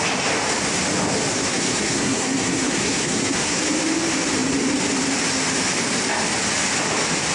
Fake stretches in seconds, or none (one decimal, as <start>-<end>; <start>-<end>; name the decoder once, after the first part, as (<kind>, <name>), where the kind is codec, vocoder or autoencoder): 1.3-3.6 (codec, SNAC)